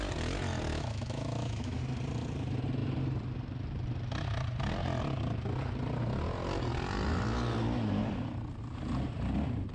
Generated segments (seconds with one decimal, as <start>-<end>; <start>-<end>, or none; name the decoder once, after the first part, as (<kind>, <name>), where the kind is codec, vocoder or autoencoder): 0.7-1.8 (autoencoder, DAC-VAE)